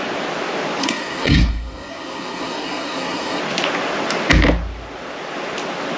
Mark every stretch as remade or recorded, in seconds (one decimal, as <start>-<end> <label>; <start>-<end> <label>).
0.0-0.8 recorded; 0.8-3.4 remade; 3.4-6.0 recorded